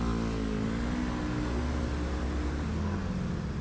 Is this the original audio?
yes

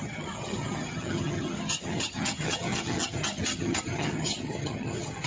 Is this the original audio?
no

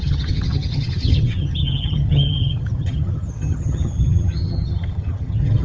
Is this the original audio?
no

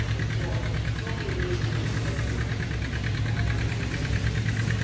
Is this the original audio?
yes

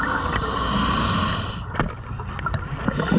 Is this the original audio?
yes